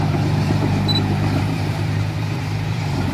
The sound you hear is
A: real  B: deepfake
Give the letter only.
B